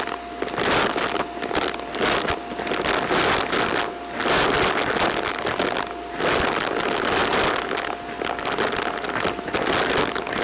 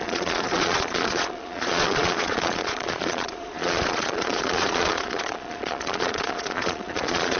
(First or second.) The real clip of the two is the first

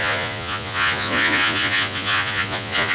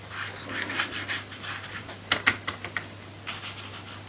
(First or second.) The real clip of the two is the second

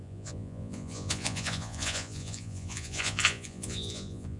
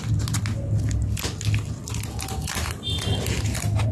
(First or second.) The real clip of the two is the second